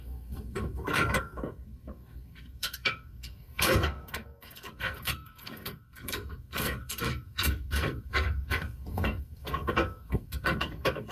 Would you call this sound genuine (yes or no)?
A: no